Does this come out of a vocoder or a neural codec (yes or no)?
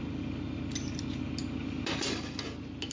no